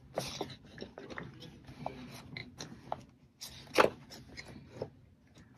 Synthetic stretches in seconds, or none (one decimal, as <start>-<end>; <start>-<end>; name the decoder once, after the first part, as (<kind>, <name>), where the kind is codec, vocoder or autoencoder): none